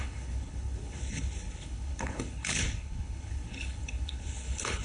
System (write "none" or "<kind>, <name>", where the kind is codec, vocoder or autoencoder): codec, HILCodec